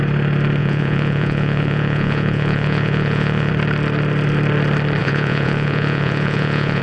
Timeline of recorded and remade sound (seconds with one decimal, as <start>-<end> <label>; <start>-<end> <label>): 0.0-0.6 recorded; 0.6-3.5 remade; 3.5-5.0 recorded; 5.0-6.8 remade